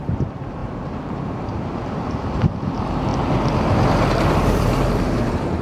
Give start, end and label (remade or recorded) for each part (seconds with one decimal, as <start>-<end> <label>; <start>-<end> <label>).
0.0-3.1 remade; 3.1-4.5 recorded; 4.5-5.6 remade